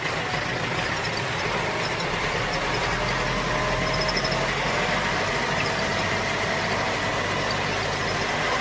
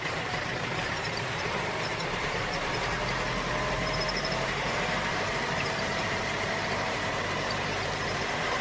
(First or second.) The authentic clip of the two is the first